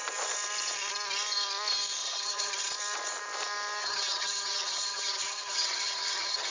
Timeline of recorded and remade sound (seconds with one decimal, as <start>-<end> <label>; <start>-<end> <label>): 0.0-2.0 recorded; 2.0-2.5 remade; 2.5-3.8 recorded; 3.8-6.5 remade